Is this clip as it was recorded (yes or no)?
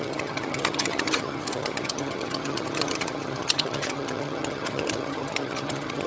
no